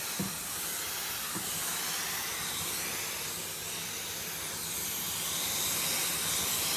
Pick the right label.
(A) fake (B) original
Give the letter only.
B